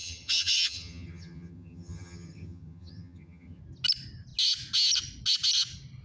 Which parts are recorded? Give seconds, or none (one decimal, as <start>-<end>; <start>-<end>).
3.6-6.0